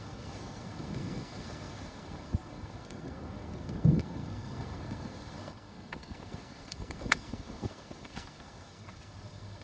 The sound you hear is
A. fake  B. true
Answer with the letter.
A